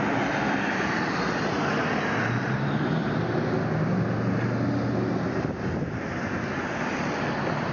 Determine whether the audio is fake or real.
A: real